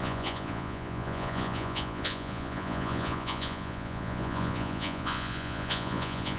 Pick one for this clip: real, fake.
fake